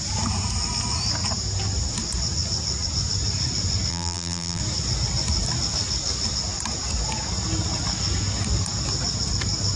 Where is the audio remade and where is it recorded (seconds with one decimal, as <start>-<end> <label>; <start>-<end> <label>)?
0.0-3.9 recorded; 3.9-4.6 remade; 4.6-9.8 recorded

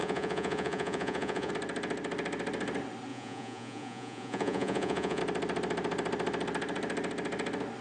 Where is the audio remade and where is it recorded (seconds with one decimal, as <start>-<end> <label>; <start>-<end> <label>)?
0.0-1.5 remade; 1.5-3.1 recorded; 3.1-5.2 remade; 5.2-7.8 recorded

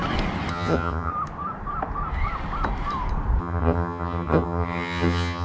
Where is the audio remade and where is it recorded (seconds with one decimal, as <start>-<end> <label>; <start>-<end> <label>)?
0.0-0.5 recorded; 0.5-1.1 remade; 1.1-3.4 recorded; 3.4-5.4 remade

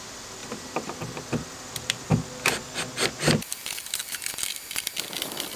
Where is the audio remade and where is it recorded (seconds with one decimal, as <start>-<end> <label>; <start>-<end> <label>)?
0.0-5.6 recorded